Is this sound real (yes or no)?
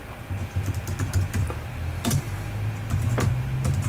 yes